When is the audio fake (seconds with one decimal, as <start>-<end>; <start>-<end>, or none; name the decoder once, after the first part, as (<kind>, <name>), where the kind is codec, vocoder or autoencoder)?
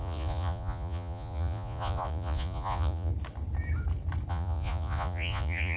0.0-3.1 (vocoder, Vocos); 4.3-5.8